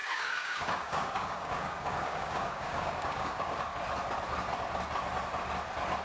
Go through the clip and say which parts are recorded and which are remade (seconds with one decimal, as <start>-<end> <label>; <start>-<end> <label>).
0.0-3.6 remade; 3.6-6.0 recorded